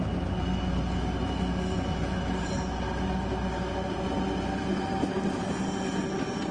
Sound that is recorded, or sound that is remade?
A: recorded